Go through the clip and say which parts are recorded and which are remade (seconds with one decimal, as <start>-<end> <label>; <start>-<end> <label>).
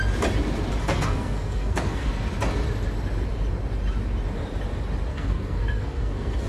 0.0-0.8 recorded; 0.8-2.1 remade; 2.1-5.1 recorded; 5.1-6.5 remade